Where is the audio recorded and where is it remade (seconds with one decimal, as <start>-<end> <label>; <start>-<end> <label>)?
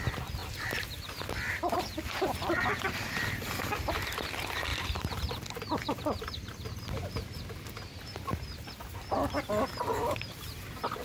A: 0.0-11.0 remade